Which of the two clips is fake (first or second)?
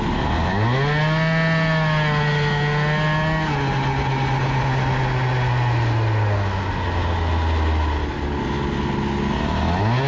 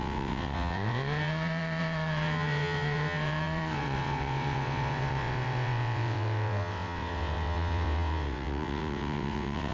second